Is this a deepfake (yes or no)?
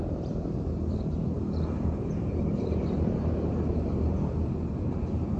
yes